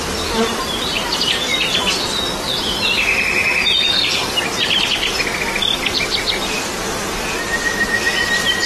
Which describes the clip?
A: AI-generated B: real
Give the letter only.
B